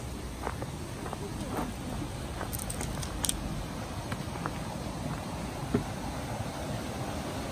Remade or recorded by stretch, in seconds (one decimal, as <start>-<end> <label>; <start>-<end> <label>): 0.0-7.5 recorded